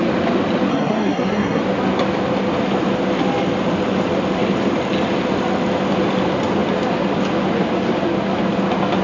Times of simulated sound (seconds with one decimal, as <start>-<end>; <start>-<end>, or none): 0.7-1.6